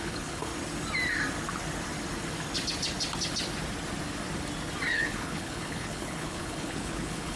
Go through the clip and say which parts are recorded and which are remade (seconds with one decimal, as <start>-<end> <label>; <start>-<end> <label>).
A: 0.0-0.5 remade; 0.5-4.9 recorded; 4.9-7.4 remade